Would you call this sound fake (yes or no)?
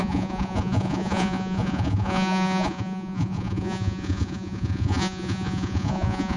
yes